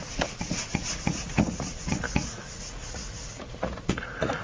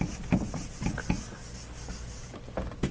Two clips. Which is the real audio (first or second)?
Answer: second